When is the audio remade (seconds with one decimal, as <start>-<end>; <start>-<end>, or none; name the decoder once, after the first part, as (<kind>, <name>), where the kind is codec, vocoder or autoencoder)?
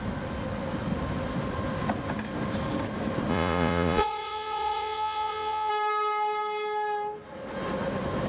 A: 3.3-5.7 (vocoder, Vocos)